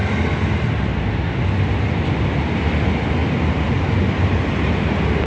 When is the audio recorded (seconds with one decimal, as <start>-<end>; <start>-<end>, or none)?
0.0-5.3